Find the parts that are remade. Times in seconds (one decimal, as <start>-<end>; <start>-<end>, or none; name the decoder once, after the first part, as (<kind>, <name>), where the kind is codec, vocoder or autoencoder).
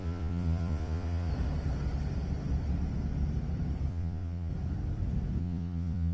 0.0-1.3 (vocoder, Vocos); 3.9-4.5; 5.4-6.1